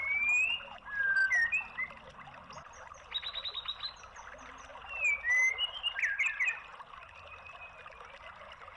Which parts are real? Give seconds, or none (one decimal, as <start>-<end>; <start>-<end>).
0.0-8.8